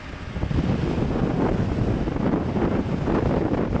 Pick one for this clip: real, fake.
real